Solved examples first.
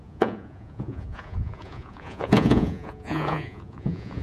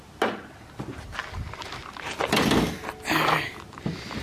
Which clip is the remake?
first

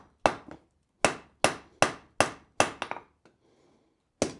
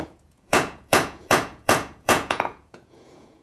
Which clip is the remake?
second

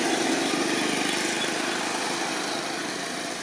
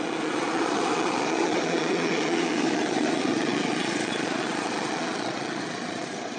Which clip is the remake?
second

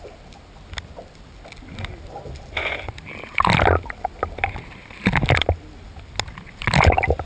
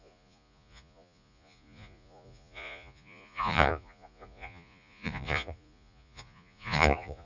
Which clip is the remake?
second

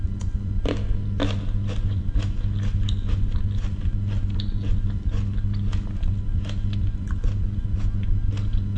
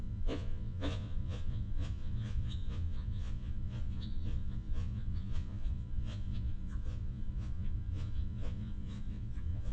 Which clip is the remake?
second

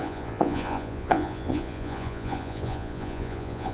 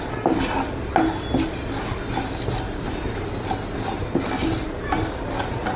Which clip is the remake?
first